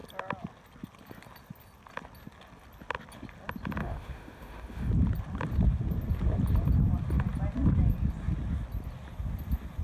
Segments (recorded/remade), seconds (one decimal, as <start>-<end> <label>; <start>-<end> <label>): 0.0-3.8 recorded; 3.8-4.9 remade; 4.9-9.8 recorded